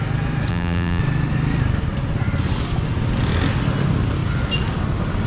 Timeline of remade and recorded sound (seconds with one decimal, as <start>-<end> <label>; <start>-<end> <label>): 0.0-0.5 recorded; 0.5-1.0 remade; 1.0-5.3 recorded